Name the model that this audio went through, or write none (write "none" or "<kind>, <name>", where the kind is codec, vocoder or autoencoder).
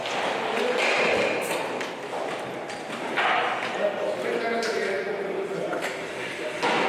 none